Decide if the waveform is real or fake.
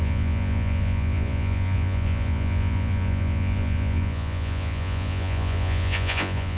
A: fake